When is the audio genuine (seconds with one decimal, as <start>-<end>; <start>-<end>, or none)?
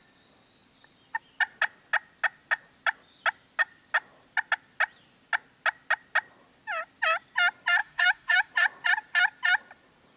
0.0-7.8; 8.5-10.2